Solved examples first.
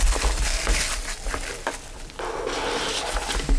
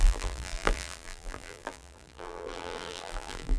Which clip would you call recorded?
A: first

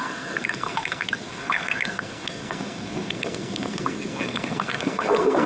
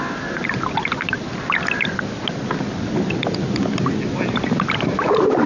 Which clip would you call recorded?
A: second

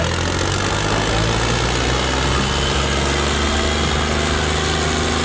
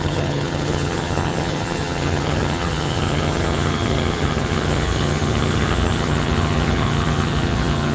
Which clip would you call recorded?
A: first